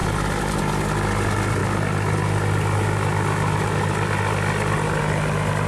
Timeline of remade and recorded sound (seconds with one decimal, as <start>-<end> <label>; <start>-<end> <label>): 0.0-5.7 recorded